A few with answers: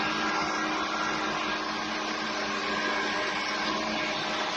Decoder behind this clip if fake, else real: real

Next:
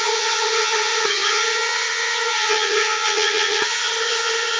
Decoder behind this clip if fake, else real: fake, vocoder, HiFi-GAN